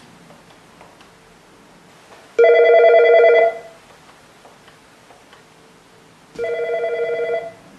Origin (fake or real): real